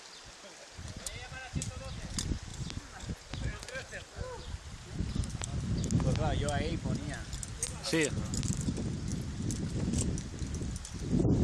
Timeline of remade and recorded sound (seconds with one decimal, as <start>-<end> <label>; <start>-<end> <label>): 0.0-11.4 recorded